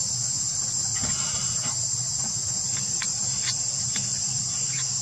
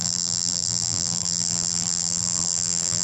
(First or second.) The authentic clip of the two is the first